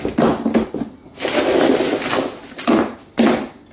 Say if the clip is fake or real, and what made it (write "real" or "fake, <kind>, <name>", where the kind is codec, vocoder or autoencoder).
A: real